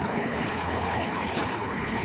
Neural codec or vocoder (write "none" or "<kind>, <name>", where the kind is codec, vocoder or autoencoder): codec, HILCodec